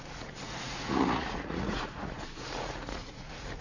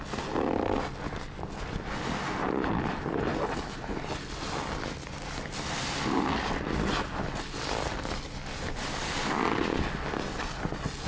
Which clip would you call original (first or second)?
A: second